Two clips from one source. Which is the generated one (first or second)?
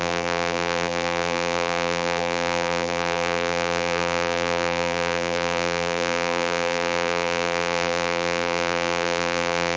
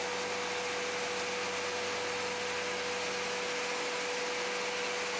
first